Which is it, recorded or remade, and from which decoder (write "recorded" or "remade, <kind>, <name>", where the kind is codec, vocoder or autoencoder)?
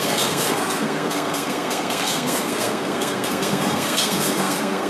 remade, codec, SNAC